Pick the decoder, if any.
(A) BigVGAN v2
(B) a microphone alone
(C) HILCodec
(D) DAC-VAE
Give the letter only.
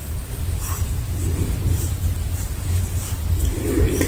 A